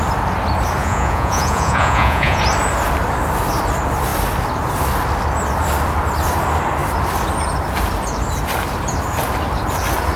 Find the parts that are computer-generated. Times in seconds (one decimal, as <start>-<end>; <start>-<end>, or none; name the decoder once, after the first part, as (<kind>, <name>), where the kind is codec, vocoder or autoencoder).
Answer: 0.8-2.4 (vocoder, Vocos)